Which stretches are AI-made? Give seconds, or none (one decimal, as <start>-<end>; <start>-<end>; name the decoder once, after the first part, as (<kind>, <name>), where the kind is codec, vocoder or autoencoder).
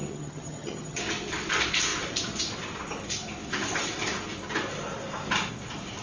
0.0-1.0 (vocoder, HiFi-GAN)